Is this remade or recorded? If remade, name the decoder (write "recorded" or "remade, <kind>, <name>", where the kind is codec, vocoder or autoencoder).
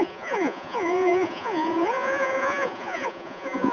remade, vocoder, Vocos